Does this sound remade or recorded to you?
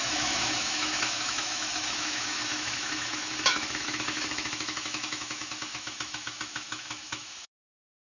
remade